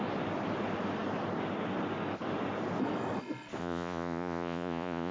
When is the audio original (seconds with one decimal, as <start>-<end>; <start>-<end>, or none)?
0.0-3.6